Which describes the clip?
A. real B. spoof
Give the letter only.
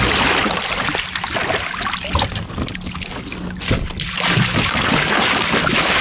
A